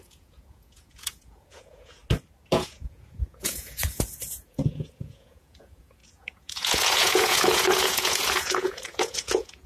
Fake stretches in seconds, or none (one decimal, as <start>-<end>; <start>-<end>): 0.0-2.0; 2.5-9.7